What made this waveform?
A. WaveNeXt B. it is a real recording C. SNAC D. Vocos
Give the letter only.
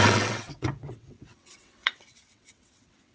A